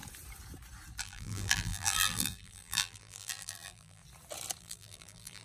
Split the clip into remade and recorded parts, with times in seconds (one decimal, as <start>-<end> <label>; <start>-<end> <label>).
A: 0.0-1.0 recorded; 1.0-4.0 remade; 4.0-4.6 recorded; 4.6-5.4 remade